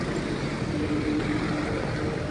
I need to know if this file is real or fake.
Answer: real